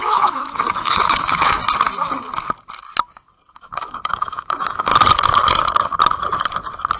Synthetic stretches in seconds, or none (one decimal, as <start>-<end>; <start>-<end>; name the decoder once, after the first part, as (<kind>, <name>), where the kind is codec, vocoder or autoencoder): 0.0-1.6 (autoencoder, DAC-VAE); 3.5-4.9